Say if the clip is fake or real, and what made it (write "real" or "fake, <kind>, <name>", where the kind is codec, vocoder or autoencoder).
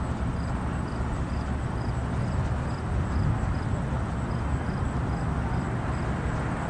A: real